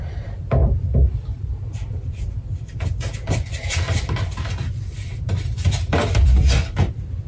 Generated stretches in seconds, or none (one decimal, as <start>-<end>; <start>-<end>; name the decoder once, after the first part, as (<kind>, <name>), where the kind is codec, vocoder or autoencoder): none